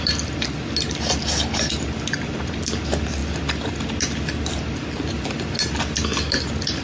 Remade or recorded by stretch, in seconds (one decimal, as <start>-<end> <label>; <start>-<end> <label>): 0.0-6.8 recorded